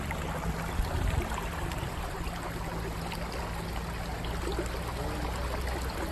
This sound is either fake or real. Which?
real